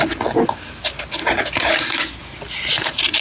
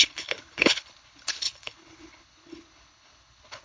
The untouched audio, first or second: first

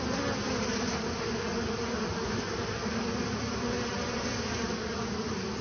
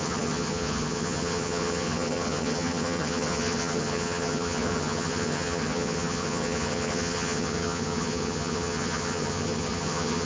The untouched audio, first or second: first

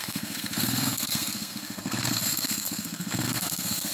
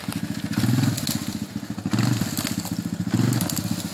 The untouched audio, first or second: second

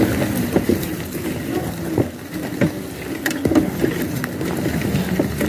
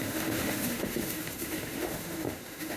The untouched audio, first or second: first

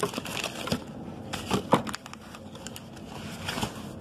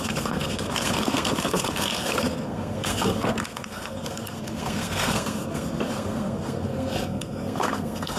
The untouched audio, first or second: first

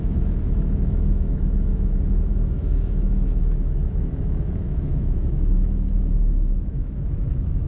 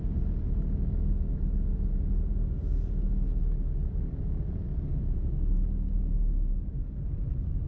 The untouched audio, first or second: second